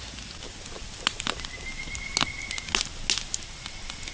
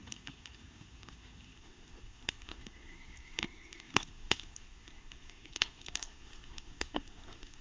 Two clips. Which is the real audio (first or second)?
first